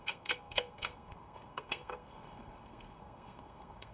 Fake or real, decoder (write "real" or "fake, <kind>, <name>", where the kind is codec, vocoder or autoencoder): fake, codec, SNAC